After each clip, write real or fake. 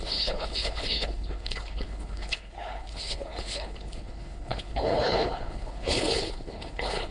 fake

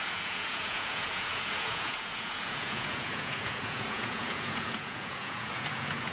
fake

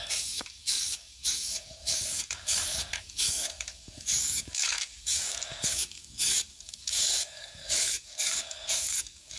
fake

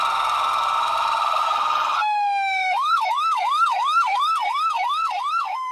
fake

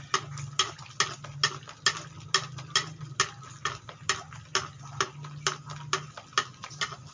real